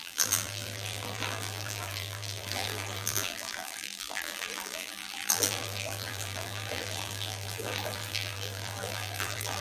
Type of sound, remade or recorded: remade